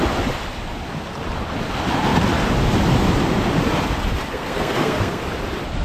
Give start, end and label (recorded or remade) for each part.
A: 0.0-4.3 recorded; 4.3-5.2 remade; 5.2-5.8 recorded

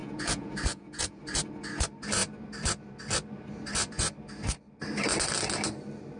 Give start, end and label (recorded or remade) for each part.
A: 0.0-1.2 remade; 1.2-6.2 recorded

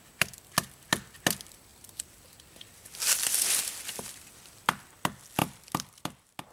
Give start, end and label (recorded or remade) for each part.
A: 0.0-6.5 recorded